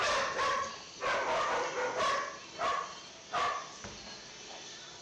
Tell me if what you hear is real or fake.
real